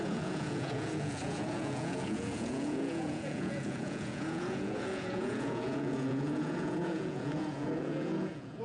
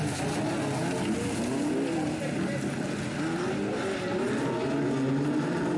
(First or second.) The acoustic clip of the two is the second